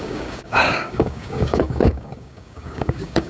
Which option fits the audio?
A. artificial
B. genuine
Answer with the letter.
A